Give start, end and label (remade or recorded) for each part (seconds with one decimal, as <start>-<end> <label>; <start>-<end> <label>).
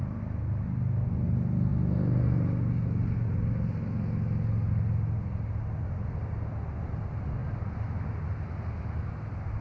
0.0-9.6 recorded